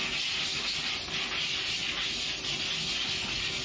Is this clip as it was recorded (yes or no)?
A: yes